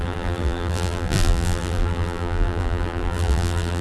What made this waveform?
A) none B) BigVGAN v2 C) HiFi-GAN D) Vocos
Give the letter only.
B